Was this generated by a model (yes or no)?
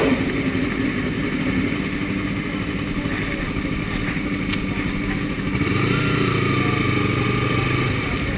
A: no